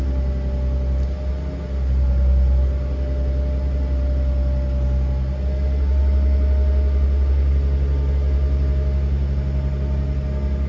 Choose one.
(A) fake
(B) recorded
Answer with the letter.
B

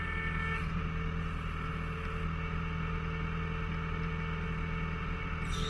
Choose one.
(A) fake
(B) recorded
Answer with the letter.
B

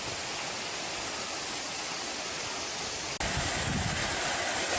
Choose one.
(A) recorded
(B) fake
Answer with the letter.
A